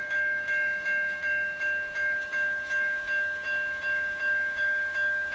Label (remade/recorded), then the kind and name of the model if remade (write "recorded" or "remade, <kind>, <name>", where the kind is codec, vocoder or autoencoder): remade, autoencoder, DAC-VAE